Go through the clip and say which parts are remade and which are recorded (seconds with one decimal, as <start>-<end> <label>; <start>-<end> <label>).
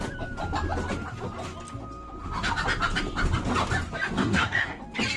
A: 0.0-4.2 recorded; 4.2-4.8 remade; 4.8-5.2 recorded